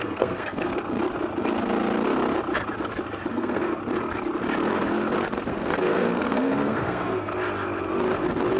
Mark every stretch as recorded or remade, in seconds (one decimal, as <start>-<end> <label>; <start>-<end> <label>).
0.0-0.7 remade; 0.7-3.3 recorded; 3.3-3.8 remade; 3.8-5.5 recorded; 5.5-7.3 remade; 7.3-8.6 recorded